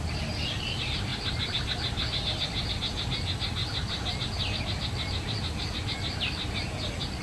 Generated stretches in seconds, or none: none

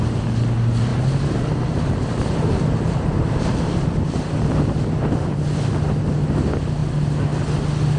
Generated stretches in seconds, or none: 0.9-5.7 (vocoder, BigVGAN v2)

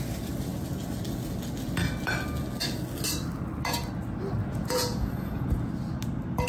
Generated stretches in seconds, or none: 4.4-5.7 (vocoder, Vocos)